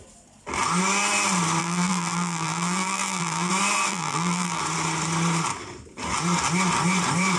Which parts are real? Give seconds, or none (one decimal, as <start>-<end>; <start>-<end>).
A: 0.0-1.6; 3.5-3.9; 4.6-7.4